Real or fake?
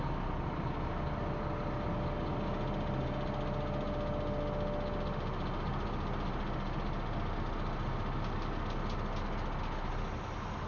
real